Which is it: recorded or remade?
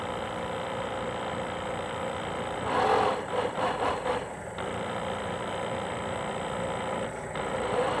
recorded